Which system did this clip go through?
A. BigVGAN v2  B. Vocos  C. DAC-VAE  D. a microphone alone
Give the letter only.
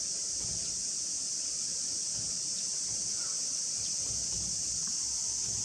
D